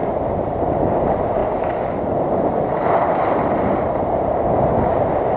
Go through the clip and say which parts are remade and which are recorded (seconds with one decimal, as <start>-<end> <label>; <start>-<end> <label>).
0.0-5.4 recorded